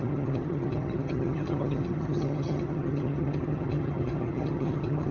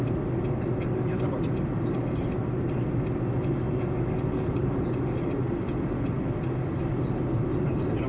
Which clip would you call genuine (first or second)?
second